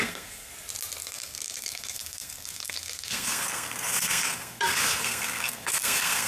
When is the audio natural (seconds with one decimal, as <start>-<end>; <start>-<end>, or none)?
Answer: 0.5-1.0